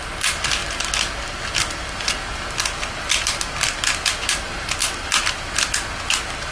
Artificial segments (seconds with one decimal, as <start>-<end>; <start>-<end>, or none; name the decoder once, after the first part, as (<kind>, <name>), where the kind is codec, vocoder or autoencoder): none